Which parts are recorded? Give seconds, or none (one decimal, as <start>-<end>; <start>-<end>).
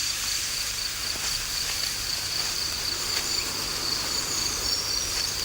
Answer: 3.2-3.7